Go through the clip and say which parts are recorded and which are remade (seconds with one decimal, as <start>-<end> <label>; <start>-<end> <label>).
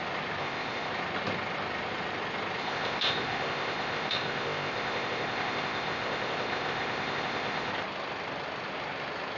0.0-0.4 recorded; 0.4-0.9 remade; 0.9-2.6 recorded; 2.6-7.7 remade; 7.7-9.4 recorded